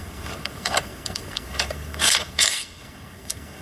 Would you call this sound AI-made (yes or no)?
yes